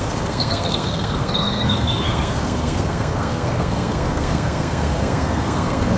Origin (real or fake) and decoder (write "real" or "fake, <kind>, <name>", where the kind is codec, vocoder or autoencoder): fake, codec, SNAC